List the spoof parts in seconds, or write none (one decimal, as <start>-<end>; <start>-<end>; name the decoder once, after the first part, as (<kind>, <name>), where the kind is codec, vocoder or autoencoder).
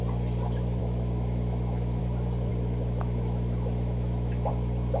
0.8-2.0 (autoencoder, DAC-VAE); 2.5-4.5